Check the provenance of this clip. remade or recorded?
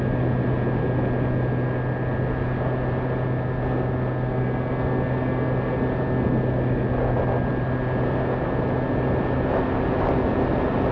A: recorded